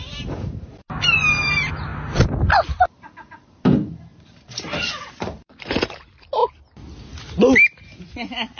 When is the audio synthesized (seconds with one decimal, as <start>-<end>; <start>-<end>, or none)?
0.0-1.9; 3.0-6.4; 8.0-8.6